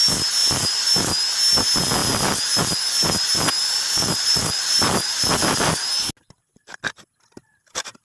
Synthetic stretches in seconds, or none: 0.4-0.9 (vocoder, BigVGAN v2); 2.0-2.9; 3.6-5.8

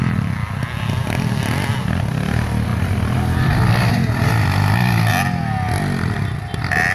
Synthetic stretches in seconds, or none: none